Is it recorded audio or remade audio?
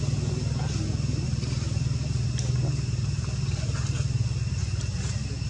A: recorded